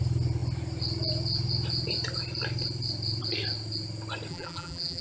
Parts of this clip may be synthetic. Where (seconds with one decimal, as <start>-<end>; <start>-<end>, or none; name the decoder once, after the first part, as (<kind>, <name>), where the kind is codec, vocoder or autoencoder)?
4.3-5.0 (vocoder, BigVGAN v2)